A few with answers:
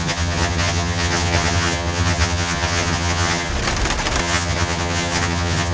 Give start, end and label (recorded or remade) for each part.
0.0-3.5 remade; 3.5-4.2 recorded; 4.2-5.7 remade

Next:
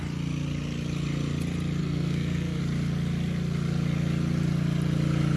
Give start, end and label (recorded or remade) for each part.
0.0-1.8 recorded; 1.8-2.6 remade; 2.6-5.4 recorded